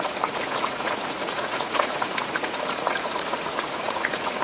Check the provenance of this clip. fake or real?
fake